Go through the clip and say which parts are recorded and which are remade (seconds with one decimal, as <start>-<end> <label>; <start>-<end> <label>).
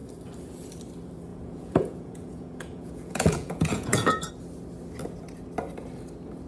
0.0-1.3 recorded; 1.3-4.3 remade; 4.3-6.5 recorded